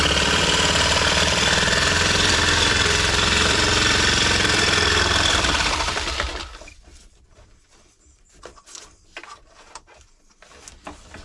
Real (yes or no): no